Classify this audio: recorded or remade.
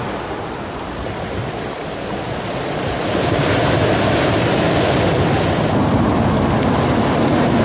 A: recorded